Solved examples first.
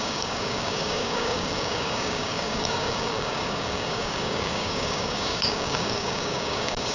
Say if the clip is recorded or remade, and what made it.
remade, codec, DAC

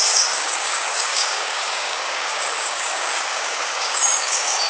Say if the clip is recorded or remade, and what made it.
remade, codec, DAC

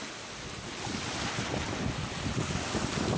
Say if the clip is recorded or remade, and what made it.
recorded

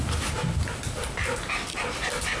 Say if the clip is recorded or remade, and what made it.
recorded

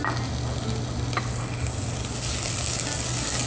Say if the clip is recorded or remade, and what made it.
recorded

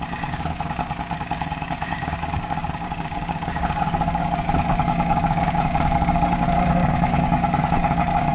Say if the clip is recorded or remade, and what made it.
remade, codec, DAC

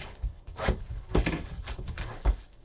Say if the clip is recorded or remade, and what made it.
remade, codec, DAC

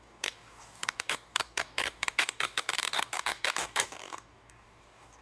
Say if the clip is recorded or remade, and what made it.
remade, codec, DAC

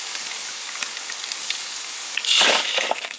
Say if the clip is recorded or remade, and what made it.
remade, codec, DAC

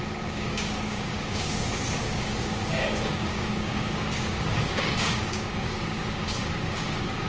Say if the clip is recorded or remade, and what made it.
remade, codec, DAC